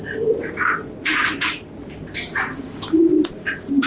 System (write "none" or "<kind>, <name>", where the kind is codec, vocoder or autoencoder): vocoder, BigVGAN v2